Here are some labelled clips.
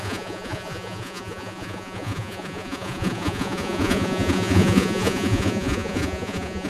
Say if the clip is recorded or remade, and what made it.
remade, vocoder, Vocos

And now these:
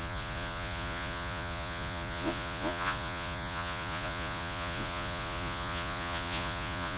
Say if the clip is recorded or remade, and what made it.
remade, vocoder, Vocos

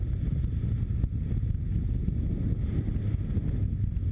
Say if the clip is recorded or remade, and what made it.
recorded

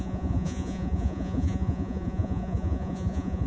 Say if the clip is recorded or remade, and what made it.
remade, vocoder, Vocos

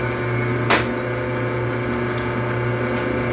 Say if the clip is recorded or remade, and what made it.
recorded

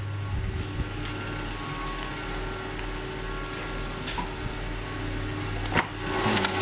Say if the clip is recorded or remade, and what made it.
recorded